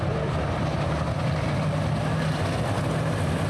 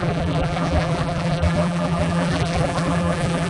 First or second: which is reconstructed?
second